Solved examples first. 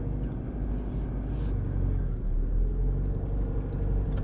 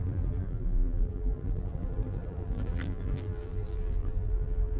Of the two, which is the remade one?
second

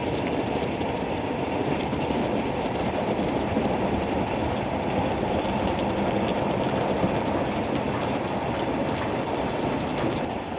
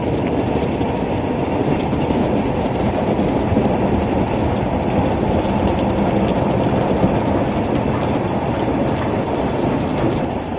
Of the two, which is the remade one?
first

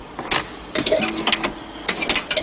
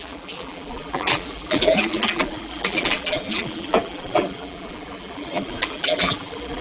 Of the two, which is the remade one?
second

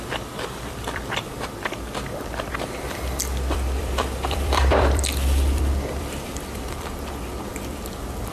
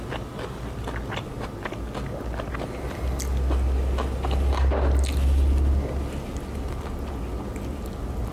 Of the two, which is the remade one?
first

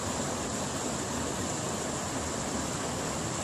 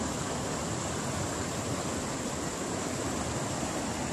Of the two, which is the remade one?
second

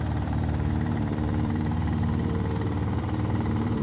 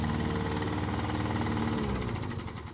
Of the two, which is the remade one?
first